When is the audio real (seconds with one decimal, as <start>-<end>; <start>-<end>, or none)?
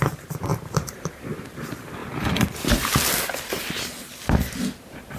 2.0-5.2